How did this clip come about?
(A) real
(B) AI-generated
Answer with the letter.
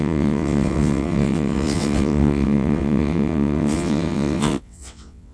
B